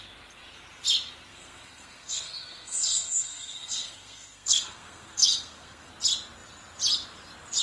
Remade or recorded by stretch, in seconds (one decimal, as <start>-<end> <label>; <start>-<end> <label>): 0.0-1.3 recorded; 1.3-5.9 remade; 5.9-7.6 recorded